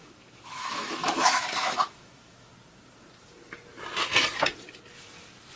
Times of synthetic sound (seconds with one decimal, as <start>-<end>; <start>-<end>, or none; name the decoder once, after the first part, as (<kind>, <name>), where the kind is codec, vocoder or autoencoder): 0.0-2.5 (autoencoder, DAC-VAE)

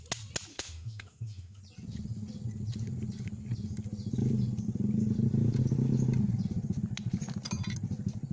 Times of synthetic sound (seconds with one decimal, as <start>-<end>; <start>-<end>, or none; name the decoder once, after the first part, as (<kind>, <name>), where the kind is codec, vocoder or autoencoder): 0.5-1.6 (autoencoder, DAC-VAE)

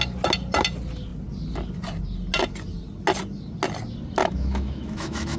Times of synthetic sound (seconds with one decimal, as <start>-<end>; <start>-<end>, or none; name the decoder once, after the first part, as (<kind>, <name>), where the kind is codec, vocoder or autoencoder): 4.2-5.4 (autoencoder, DAC-VAE)

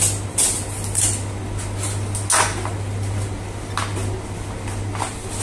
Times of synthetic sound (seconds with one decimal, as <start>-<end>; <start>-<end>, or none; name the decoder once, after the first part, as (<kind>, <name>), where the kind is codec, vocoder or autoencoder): none

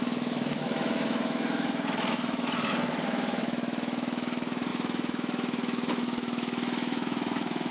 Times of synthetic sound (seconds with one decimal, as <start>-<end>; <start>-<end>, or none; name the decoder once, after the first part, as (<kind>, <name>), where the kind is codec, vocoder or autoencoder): 0.0-7.7 (autoencoder, DAC-VAE)

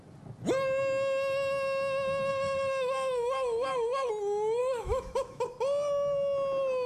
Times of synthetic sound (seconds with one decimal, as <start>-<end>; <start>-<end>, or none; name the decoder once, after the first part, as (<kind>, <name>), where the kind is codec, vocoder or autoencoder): 2.3-4.1 (autoencoder, DAC-VAE); 4.6-5.5